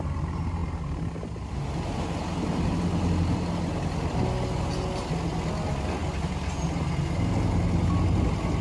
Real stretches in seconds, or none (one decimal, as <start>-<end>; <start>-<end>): 0.0-8.6